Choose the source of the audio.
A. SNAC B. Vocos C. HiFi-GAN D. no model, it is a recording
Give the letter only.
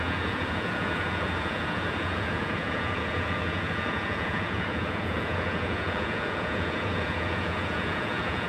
B